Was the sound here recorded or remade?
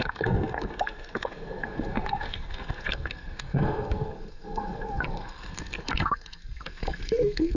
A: remade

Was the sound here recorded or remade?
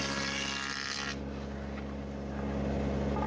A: recorded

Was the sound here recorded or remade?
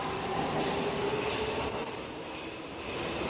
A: recorded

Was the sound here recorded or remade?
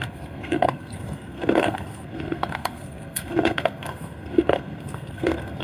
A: remade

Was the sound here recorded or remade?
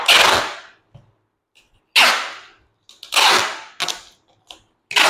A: recorded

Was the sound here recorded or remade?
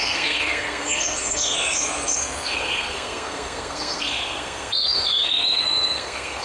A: remade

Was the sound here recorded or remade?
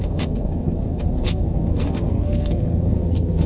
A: remade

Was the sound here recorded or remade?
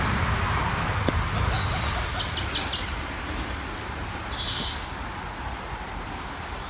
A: recorded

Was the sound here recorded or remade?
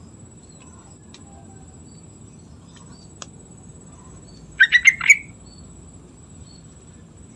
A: recorded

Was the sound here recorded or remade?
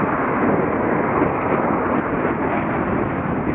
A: recorded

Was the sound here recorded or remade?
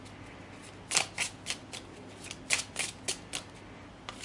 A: recorded